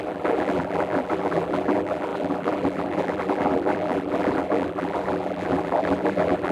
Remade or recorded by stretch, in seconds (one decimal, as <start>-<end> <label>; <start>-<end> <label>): 0.0-6.5 remade

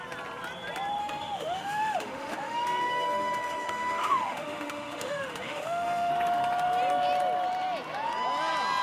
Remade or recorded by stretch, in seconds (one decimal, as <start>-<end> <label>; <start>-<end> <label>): 0.0-1.0 recorded; 1.0-6.1 remade; 6.1-8.8 recorded